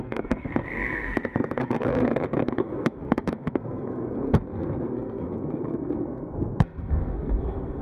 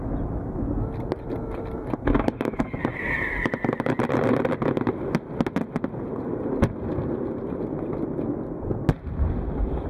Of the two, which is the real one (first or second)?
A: second